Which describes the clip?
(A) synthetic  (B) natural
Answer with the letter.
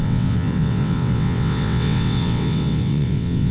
A